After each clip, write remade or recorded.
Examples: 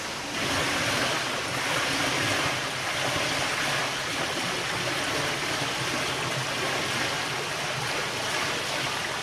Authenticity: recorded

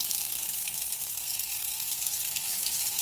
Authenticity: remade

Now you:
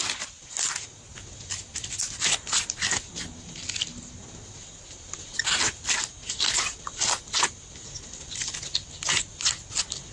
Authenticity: recorded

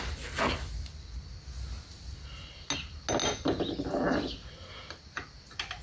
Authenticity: recorded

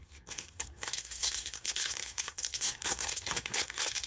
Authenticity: remade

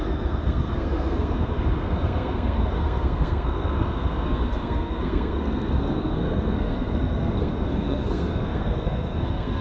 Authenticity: remade